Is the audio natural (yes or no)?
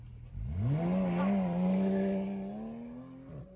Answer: yes